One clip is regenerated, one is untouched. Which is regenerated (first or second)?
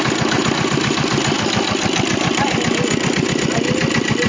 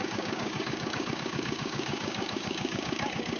second